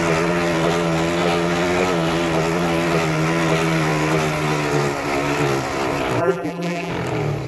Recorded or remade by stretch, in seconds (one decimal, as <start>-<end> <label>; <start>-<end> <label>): 0.0-6.2 recorded; 6.2-6.9 remade; 6.9-7.5 recorded